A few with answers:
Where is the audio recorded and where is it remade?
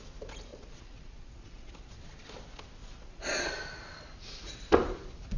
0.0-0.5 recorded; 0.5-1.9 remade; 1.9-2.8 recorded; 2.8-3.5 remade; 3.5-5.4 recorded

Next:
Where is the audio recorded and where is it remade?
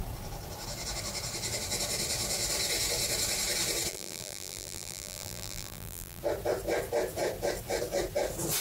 0.0-3.9 recorded; 3.9-6.2 remade; 6.2-8.6 recorded